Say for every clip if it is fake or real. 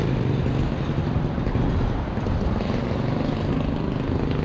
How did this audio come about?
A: real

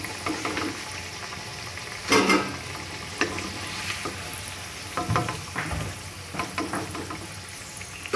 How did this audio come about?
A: real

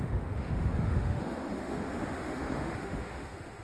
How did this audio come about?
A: fake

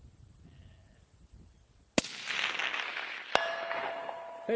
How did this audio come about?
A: real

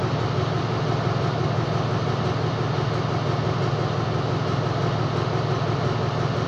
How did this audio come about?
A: real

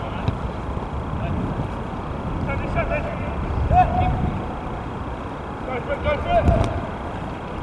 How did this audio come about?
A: real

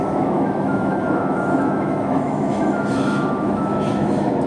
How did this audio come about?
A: fake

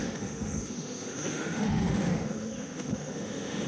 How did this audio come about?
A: fake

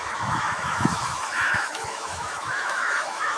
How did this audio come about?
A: fake